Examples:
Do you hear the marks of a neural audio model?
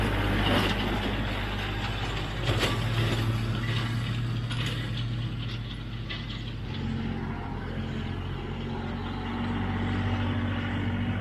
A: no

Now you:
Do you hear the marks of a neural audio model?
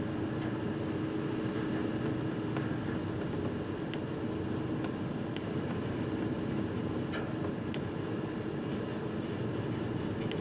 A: no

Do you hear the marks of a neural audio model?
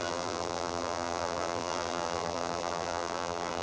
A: yes